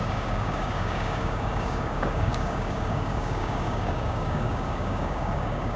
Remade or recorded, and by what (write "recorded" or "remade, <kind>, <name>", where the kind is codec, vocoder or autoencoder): remade, codec, DAC